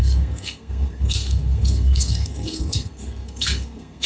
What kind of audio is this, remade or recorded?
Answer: remade